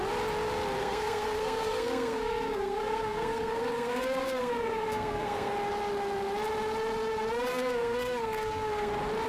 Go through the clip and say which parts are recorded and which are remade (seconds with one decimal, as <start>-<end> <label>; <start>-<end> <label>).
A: 0.0-0.8 recorded; 0.8-5.5 remade; 5.5-7.5 recorded; 7.5-8.9 remade; 8.9-9.3 recorded